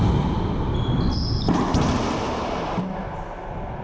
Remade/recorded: recorded